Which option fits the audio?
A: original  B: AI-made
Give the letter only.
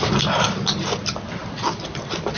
A